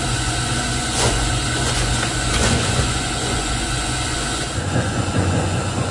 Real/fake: fake